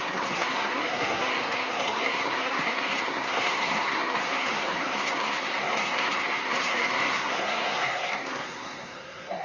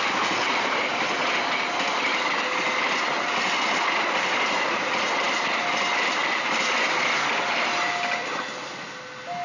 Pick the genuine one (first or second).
second